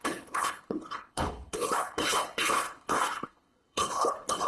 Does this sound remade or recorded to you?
remade